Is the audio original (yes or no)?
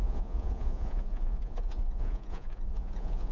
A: no